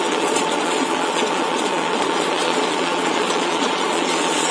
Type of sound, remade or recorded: remade